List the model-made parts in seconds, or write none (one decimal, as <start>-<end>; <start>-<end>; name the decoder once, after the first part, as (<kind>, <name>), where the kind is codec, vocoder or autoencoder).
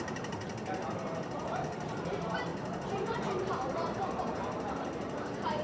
0.0-0.4 (vocoder, BigVGAN v2); 1.1-5.6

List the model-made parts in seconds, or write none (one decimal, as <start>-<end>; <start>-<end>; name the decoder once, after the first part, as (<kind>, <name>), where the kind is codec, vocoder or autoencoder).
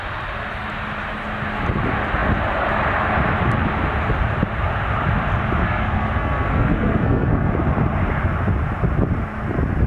5.6-7.5 (codec, SNAC)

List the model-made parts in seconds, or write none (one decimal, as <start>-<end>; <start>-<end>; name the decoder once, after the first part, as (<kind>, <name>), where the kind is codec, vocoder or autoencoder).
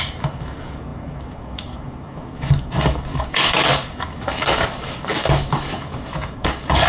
0.0-6.9 (codec, DAC)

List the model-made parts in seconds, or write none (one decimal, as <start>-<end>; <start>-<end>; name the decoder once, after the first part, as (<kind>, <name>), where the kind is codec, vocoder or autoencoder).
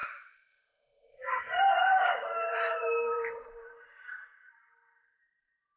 0.0-5.8 (vocoder, BigVGAN v2)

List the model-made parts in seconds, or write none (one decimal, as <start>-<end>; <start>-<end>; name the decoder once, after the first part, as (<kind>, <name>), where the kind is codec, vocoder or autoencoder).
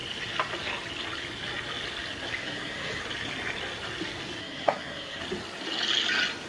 2.4-3.0 (codec, SNAC); 4.4-5.2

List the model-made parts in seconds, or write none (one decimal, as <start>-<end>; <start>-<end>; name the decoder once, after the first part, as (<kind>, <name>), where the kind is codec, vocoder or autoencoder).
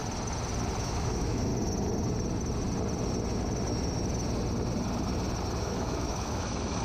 0.8-1.5 (autoencoder, DAC-VAE); 5.6-6.8